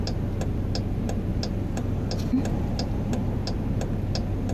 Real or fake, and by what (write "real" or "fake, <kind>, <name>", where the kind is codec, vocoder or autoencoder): real